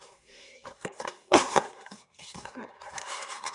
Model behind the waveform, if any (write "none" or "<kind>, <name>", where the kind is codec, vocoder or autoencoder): codec, SNAC